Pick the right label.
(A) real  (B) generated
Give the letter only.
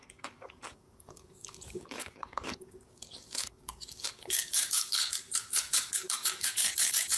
B